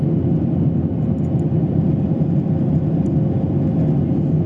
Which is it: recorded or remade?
recorded